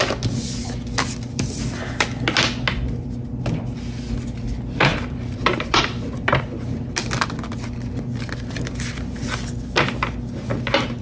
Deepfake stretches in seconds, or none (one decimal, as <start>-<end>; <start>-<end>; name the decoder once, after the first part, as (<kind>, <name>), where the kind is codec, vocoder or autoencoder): 4.9-5.8 (vocoder, BigVGAN v2)